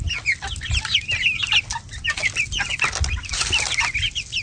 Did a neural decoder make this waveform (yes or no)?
no